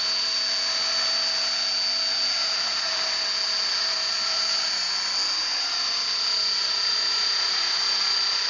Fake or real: real